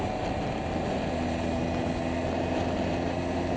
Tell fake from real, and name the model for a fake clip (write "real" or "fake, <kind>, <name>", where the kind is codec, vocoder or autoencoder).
real